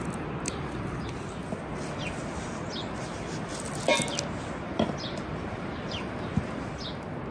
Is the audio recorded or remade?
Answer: recorded